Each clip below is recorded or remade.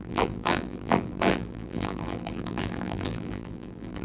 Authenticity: remade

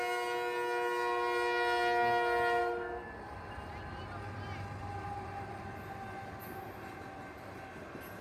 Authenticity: recorded